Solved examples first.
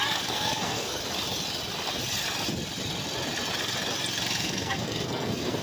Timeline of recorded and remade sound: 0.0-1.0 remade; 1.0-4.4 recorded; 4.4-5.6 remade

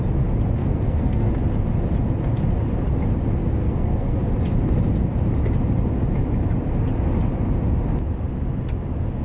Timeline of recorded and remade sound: 0.0-0.6 recorded; 0.6-1.3 remade; 1.3-3.6 recorded; 3.6-4.2 remade; 4.2-9.2 recorded

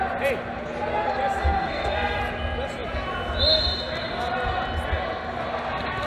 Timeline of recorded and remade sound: 0.0-1.4 recorded; 1.4-2.2 remade; 2.2-6.1 recorded

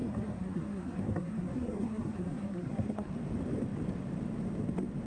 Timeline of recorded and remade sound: 0.0-3.1 remade; 3.1-5.1 recorded

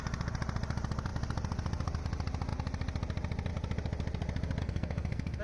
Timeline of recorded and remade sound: 0.0-4.6 recorded; 4.6-5.4 remade